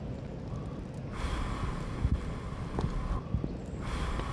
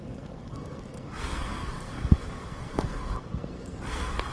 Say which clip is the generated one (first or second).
second